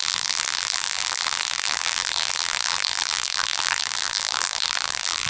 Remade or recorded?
remade